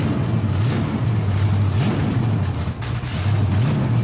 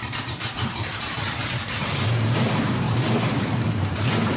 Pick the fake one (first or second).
second